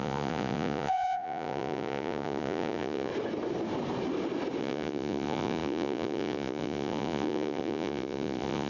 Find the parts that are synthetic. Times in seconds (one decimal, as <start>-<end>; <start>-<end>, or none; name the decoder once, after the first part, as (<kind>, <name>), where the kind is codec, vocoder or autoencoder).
0.0-3.1 (vocoder, Vocos); 4.6-8.7

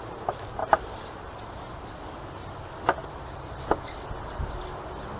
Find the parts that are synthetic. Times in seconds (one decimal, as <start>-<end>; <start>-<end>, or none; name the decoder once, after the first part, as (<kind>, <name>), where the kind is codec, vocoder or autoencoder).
0.6-1.8 (vocoder, BigVGAN v2); 3.0-3.6

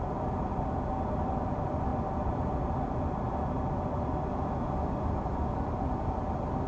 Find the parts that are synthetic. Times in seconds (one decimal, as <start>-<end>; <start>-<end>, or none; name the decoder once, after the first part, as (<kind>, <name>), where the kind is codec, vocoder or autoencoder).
none

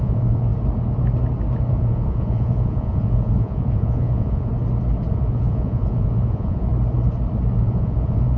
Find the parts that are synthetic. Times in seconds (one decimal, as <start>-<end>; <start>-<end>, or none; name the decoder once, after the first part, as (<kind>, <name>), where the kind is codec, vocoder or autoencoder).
0.0-0.5 (vocoder, Vocos); 1.7-4.5; 5.1-6.7; 7.6-8.4

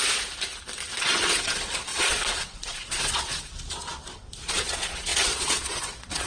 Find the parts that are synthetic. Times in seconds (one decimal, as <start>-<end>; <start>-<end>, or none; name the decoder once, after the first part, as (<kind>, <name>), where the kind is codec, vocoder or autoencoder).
1.0-6.3 (vocoder, Vocos)

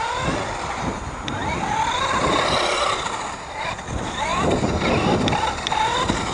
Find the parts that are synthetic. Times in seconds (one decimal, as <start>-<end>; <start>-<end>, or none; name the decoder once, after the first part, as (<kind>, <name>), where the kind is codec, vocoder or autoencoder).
none

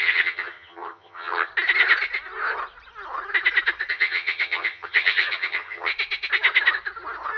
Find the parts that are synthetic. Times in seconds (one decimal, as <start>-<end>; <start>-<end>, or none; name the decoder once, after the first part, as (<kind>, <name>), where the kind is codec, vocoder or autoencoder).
0.0-1.5 (vocoder, HiFi-GAN); 3.9-5.9